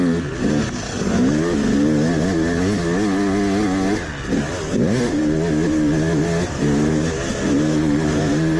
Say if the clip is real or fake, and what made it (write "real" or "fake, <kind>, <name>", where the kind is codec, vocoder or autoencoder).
real